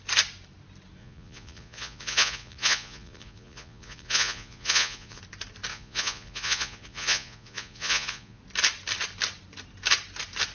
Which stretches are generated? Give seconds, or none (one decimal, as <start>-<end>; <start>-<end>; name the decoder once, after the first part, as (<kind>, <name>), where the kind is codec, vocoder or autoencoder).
1.0-5.2 (vocoder, Vocos); 5.7-8.4